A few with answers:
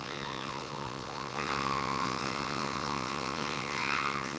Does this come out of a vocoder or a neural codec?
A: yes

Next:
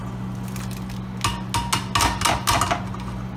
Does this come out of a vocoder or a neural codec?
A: no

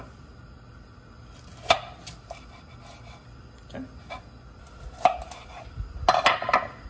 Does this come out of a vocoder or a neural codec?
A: no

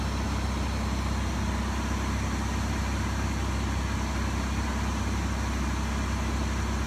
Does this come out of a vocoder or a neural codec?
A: no